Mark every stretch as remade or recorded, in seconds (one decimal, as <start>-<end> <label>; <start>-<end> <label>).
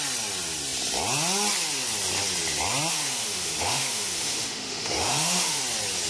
0.0-2.9 recorded; 2.9-5.6 remade; 5.6-6.1 recorded